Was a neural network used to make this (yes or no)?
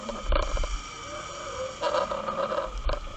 no